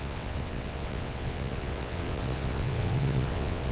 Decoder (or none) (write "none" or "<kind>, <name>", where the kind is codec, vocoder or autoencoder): vocoder, WaveNeXt